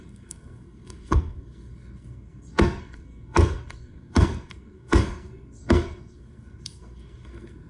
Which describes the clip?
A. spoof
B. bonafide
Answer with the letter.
A